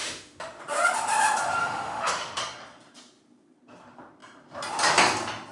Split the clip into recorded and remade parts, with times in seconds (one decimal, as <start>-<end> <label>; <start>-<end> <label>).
0.0-0.6 remade; 0.6-1.6 recorded; 1.6-2.4 remade; 2.4-5.5 recorded